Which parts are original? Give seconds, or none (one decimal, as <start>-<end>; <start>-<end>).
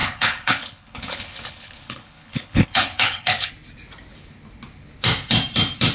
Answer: 3.5-5.9